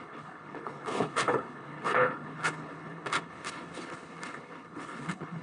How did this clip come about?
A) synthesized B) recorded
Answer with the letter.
A